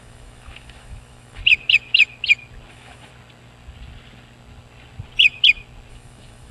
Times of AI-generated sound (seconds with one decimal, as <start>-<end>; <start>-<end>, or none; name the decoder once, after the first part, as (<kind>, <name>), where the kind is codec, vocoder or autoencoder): 0.0-1.4 (autoencoder, DAC-VAE); 2.7-3.1; 5.9-6.5